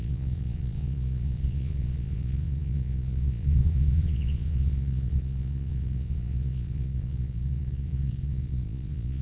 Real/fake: fake